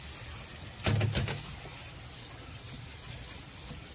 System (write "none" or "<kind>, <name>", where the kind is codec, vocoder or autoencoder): none